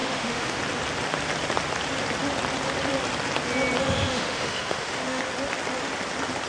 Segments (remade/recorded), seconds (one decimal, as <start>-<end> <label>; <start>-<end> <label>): 0.0-0.6 remade; 0.6-3.8 recorded; 3.8-5.2 remade; 5.2-6.5 recorded